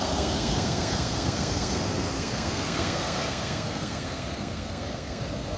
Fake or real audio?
fake